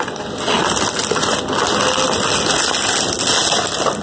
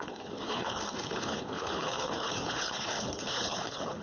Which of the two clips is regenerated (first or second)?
second